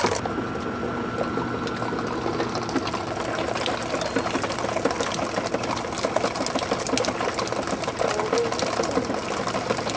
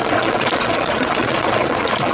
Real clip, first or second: first